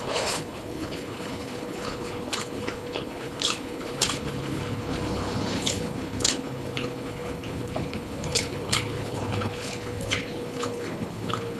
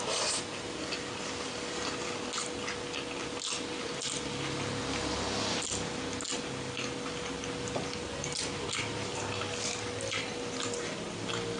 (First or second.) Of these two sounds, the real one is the second